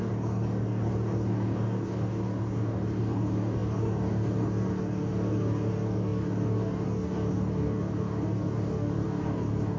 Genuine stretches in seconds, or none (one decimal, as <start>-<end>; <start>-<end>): none